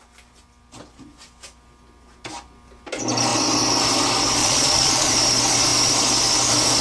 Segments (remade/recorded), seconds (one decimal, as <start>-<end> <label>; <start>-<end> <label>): 0.0-4.4 recorded; 4.4-5.1 remade; 5.1-6.8 recorded